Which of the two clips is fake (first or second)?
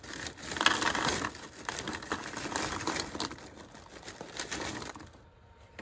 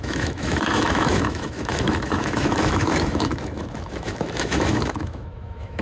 second